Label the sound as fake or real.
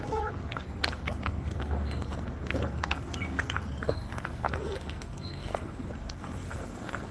fake